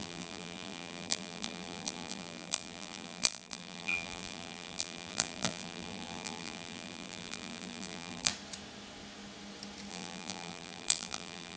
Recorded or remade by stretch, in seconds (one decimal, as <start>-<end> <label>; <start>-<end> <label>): 0.0-8.3 remade; 8.3-9.9 recorded; 9.9-11.6 remade